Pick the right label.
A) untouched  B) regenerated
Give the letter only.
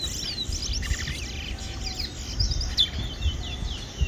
A